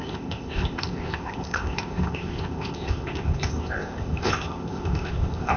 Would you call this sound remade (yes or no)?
yes